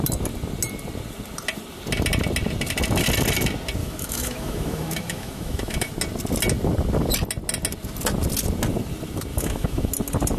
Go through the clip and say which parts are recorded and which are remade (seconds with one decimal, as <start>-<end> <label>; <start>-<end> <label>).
0.0-3.8 recorded; 3.8-5.9 remade; 5.9-9.3 recorded; 9.3-9.9 remade; 9.9-10.4 recorded